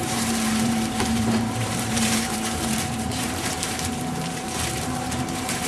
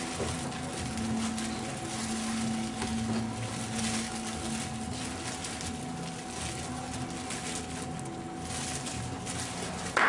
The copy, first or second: first